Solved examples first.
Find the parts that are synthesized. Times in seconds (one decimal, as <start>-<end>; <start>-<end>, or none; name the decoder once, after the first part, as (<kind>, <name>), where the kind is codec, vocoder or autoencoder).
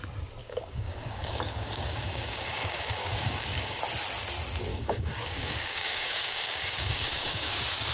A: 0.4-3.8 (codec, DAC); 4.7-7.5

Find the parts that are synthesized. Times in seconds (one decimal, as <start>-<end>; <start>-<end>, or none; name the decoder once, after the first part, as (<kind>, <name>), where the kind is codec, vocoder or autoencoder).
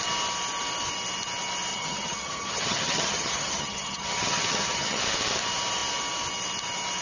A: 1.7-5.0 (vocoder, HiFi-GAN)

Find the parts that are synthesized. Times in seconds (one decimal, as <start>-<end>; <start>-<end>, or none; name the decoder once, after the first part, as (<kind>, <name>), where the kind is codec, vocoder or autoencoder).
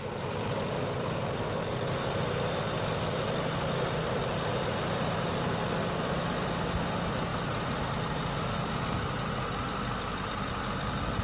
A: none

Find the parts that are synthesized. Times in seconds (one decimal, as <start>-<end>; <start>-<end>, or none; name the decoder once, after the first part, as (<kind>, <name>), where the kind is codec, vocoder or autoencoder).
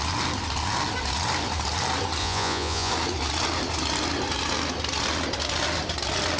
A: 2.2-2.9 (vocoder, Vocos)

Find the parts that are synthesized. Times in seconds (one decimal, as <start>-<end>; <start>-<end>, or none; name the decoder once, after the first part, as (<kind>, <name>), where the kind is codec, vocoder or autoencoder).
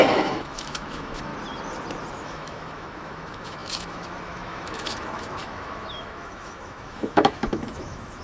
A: 0.0-1.3 (autoencoder, DAC-VAE); 2.1-8.2